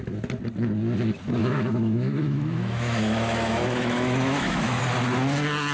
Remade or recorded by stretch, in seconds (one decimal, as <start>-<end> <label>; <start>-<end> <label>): 0.0-1.4 recorded; 1.4-4.8 remade; 4.8-5.7 recorded

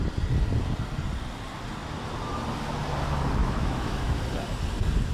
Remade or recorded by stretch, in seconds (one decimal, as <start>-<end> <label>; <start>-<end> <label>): 0.0-3.4 recorded; 3.4-4.2 remade; 4.2-5.1 recorded

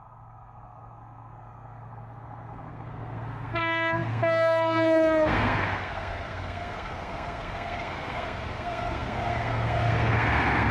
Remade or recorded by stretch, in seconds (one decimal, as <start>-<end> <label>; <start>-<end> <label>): 0.0-10.7 remade

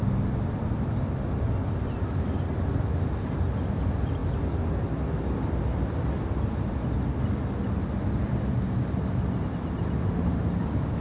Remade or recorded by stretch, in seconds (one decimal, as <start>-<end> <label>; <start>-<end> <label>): 0.0-11.0 recorded

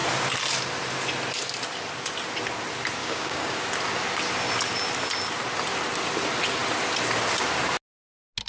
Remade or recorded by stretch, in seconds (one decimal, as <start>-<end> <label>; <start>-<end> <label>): 0.0-3.0 recorded; 3.0-3.6 remade; 3.6-8.5 recorded

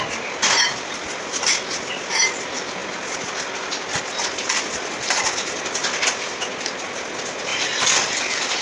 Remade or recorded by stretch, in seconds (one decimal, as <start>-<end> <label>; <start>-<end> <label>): 0.0-7.5 recorded; 7.5-8.2 remade; 8.2-8.6 recorded